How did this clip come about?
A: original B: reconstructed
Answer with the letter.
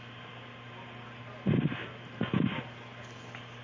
A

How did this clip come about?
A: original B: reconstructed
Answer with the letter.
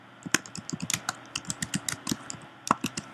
A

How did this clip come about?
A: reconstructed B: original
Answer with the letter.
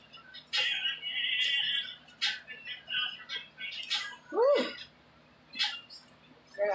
B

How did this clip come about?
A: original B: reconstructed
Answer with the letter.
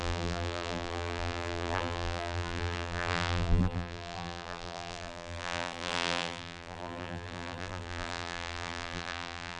B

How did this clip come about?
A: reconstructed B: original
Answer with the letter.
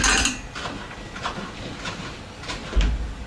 B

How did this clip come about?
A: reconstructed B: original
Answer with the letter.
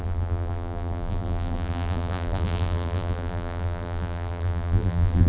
A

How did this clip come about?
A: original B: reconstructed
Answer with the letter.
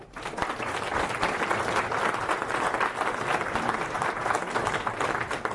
A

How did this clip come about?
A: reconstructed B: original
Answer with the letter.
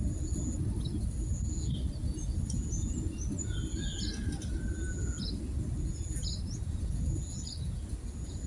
B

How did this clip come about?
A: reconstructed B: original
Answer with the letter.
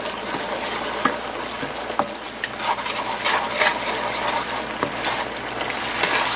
B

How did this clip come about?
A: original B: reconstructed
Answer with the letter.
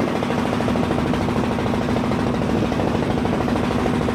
A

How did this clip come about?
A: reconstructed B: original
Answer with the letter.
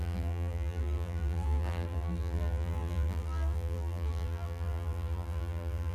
A